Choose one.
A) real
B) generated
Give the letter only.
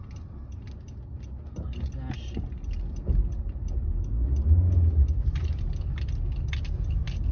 A